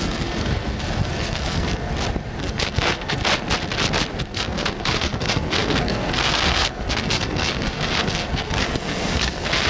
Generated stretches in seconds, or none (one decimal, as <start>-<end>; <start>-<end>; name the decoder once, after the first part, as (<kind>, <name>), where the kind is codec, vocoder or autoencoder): 0.0-1.9 (codec, SNAC); 2.4-3.2; 4.2-9.7